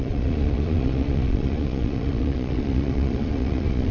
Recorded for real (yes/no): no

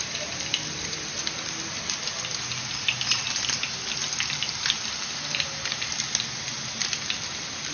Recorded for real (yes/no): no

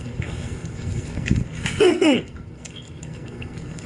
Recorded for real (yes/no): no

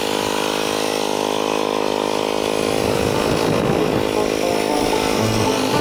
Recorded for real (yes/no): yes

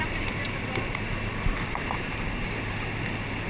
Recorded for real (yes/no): yes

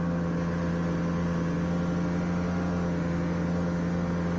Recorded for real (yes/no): yes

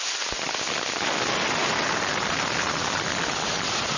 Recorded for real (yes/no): yes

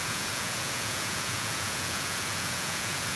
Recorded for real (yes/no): no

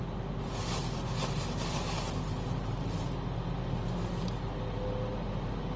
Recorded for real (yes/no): yes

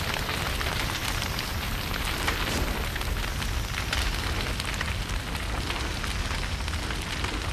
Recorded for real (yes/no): yes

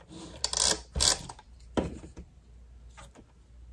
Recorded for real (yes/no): yes